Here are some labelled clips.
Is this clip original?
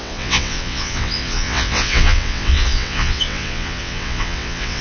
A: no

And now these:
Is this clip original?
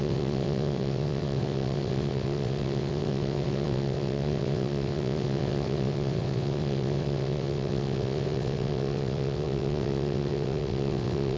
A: no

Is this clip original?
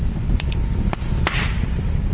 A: yes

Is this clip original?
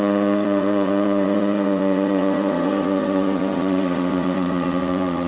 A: no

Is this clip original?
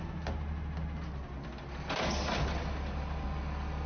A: yes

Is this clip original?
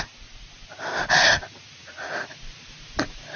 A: yes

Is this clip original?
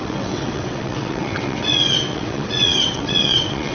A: no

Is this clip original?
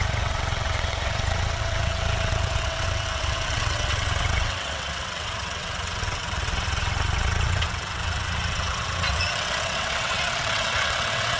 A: no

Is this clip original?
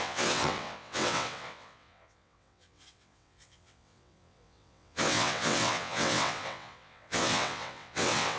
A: no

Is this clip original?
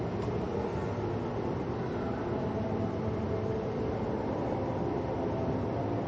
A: yes